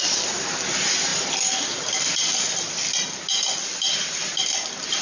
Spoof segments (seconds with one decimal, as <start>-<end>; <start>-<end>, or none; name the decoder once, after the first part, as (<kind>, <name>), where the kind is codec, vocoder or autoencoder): none